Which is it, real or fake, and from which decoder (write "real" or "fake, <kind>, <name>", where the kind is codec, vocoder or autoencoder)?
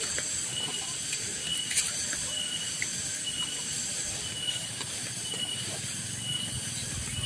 real